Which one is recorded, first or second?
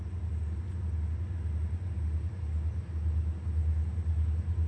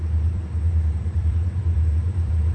first